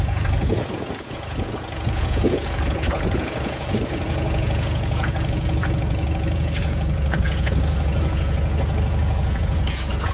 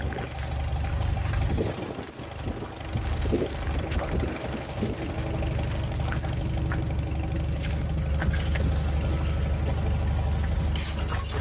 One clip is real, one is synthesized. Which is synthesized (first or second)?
first